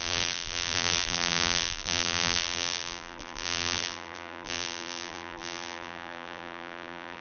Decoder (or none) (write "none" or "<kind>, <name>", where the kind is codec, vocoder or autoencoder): vocoder, BigVGAN v2